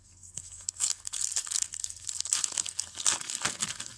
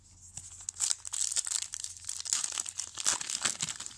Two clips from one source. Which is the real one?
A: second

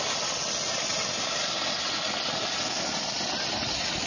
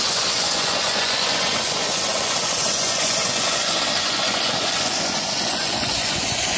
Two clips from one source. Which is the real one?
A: first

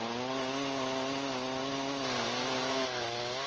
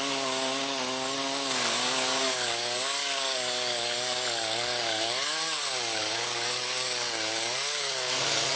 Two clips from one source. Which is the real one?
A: first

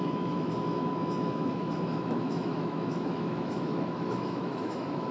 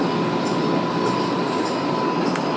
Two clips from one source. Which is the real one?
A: second